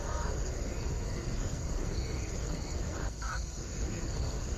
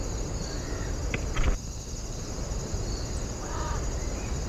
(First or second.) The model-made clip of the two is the first